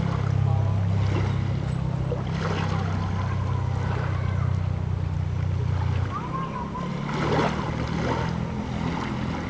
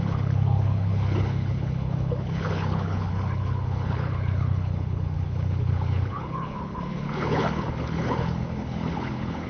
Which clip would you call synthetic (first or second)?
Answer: second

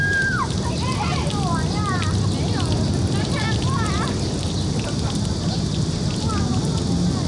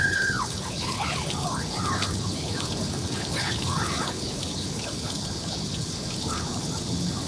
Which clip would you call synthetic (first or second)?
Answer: second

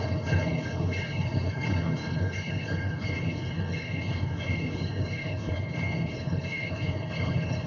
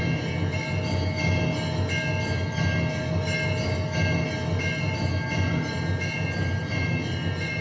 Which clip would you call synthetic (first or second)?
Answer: first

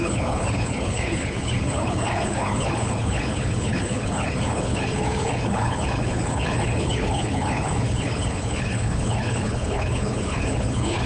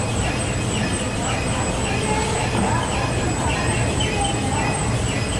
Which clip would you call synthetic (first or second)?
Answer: first